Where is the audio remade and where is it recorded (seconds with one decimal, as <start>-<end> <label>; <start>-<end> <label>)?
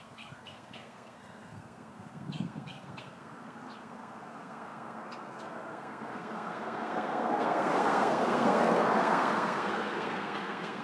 0.0-10.8 remade